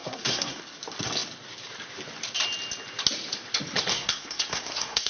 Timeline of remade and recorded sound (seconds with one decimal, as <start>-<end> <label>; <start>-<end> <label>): 0.0-0.6 remade; 0.6-3.9 recorded; 3.9-5.1 remade